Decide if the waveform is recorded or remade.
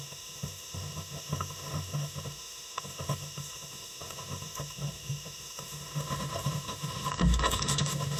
remade